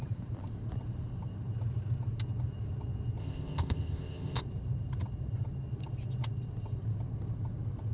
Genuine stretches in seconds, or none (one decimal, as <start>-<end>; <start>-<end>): 0.0-3.2; 4.4-7.9